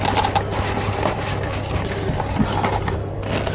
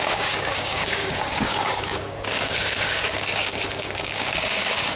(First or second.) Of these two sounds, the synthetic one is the second